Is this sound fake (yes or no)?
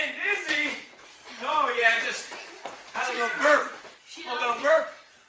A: yes